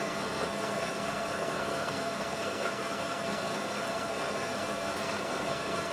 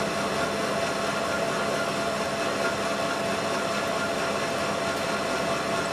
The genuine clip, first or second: second